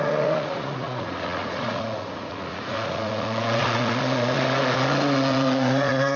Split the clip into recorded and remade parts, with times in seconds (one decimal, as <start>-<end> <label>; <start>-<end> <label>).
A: 0.0-6.2 remade